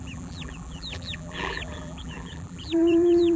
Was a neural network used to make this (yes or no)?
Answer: yes